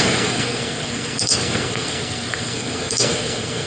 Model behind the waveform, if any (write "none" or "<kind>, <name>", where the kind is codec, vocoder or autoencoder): codec, SNAC